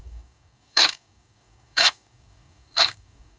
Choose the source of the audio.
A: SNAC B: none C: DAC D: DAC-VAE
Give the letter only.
C